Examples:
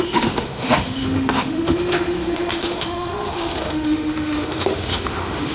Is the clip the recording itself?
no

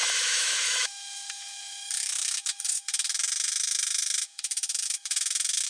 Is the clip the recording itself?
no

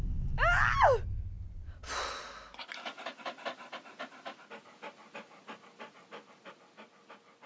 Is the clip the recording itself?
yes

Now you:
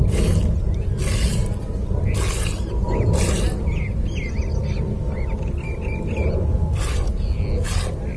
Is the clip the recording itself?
yes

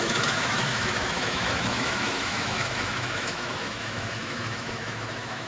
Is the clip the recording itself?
no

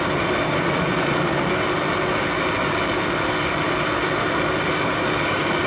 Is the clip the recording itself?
yes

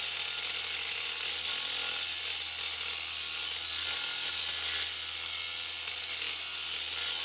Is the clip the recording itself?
yes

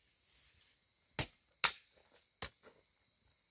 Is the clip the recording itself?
yes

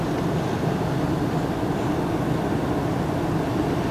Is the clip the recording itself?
yes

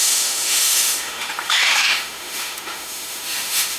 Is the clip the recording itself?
no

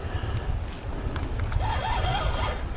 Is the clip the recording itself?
yes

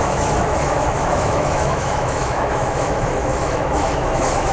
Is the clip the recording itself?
no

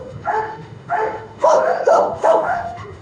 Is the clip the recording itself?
no